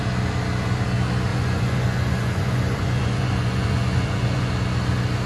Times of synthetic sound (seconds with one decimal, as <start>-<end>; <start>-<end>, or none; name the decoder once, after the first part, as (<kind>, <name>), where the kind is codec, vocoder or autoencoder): 1.3-4.5 (vocoder, Vocos)